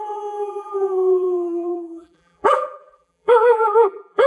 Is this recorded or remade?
remade